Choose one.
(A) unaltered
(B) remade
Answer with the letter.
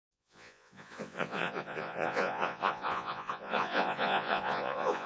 B